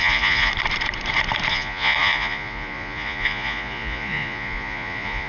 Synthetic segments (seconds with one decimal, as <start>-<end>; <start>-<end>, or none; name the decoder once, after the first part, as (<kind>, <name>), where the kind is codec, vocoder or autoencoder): 0.0-0.5 (vocoder, Vocos); 1.5-5.3

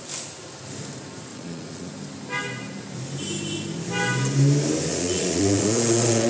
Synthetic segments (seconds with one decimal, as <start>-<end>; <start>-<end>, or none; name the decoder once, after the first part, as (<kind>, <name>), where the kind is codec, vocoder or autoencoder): 1.3-1.9 (vocoder, Vocos); 4.9-6.3

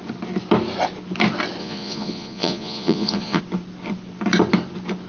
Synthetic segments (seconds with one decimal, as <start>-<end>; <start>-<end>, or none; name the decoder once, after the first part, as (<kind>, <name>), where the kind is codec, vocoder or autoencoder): 1.6-3.4 (vocoder, Vocos)

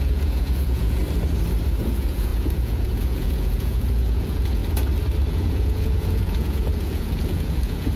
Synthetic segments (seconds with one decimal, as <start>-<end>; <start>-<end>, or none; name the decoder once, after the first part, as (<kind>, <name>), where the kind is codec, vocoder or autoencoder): 0.0-1.0 (vocoder, Vocos); 1.8-4.6; 5.3-8.0

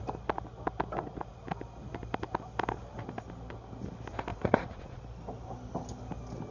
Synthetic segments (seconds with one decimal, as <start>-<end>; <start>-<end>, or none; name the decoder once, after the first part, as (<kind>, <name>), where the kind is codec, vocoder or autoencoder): 4.3-5.0 (vocoder, Vocos)

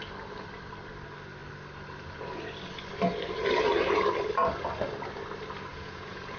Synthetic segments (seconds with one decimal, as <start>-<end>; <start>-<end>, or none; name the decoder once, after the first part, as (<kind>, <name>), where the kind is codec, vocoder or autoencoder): 5.7-6.4 (vocoder, Vocos)

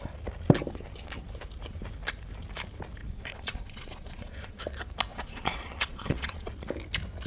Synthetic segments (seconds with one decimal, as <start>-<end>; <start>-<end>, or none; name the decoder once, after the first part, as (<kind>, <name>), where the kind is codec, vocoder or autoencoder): 3.0-4.6 (vocoder, Vocos); 5.1-6.5

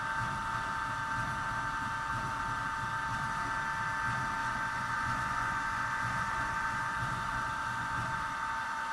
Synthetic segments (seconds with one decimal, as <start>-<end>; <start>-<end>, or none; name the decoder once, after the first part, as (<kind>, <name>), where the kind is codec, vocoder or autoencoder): 4.4-8.9 (vocoder, Vocos)